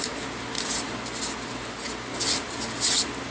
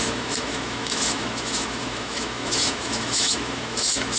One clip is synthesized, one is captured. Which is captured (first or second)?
first